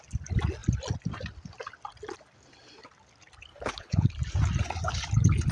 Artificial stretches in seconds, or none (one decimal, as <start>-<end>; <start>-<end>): 3.5-4.1